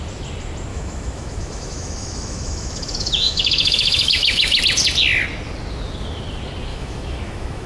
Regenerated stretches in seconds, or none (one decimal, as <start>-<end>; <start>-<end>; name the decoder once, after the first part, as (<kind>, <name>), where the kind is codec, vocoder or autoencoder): 0.7-4.6 (autoencoder, DAC-VAE); 6.7-7.7